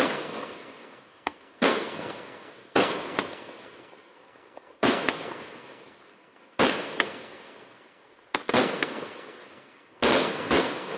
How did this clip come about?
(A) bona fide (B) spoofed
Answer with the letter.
B